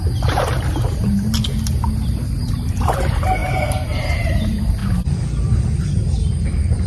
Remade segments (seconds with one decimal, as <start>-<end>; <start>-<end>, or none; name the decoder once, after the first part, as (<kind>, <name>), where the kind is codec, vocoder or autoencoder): 0.0-1.5 (vocoder, BigVGAN v2); 2.8-4.8; 5.8-6.9